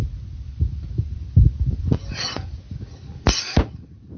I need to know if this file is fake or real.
real